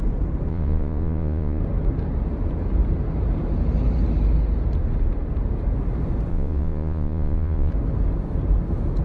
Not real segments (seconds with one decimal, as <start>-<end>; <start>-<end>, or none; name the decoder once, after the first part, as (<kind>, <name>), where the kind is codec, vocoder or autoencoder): 0.5-1.6 (vocoder, Vocos); 6.3-7.7